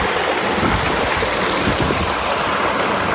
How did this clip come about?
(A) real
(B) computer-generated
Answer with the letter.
A